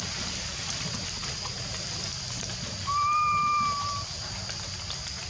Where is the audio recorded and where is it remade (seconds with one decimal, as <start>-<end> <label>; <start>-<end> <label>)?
0.0-5.3 recorded